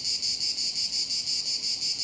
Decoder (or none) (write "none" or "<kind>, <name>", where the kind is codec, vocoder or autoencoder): none